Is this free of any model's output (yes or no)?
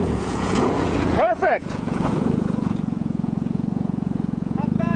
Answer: no